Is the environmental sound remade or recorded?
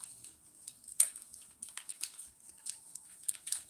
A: remade